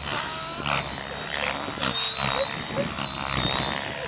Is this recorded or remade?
recorded